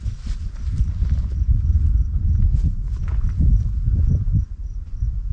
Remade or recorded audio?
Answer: recorded